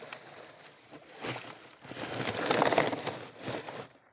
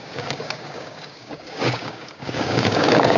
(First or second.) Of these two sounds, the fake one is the second